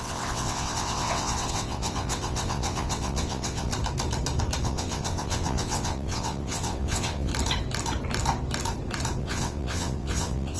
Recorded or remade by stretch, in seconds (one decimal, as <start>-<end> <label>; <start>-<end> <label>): 0.0-3.7 remade; 3.7-4.6 recorded; 4.6-7.3 remade; 7.3-9.2 recorded; 9.2-10.6 remade